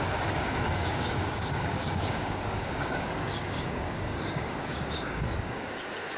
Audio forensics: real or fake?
fake